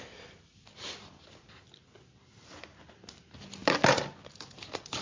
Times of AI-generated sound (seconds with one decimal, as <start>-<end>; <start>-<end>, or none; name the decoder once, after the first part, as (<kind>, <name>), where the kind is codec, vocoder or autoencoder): none